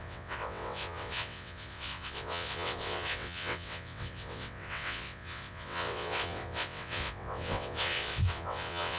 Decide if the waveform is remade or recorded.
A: remade